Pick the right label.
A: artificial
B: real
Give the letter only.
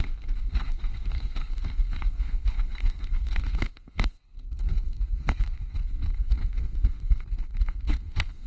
A